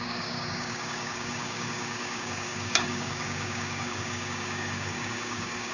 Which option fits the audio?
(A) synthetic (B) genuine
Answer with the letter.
A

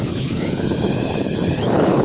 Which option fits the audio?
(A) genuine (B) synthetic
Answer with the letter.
B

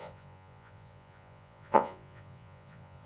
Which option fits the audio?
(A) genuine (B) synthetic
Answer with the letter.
B